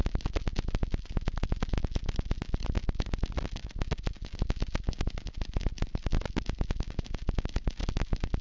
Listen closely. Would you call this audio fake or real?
real